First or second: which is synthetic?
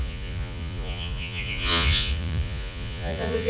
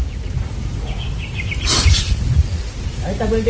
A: first